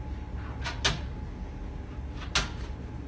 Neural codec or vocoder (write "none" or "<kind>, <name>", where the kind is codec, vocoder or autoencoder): none